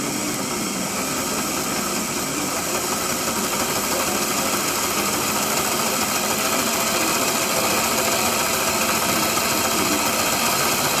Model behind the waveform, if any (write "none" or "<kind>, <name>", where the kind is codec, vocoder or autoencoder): none